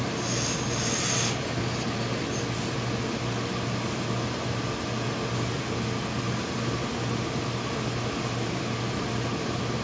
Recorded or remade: recorded